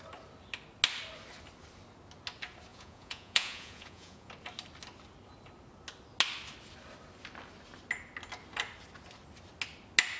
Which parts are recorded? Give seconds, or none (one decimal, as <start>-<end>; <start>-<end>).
0.0-2.7; 4.3-10.2